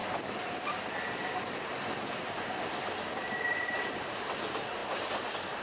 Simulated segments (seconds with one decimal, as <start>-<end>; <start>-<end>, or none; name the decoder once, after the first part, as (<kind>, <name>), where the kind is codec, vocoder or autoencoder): none